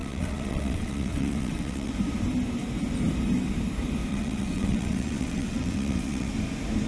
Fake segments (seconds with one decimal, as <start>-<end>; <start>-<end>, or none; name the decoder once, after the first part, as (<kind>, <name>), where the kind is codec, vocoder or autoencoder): 0.0-1.9 (vocoder, WaveNeXt); 4.1-6.3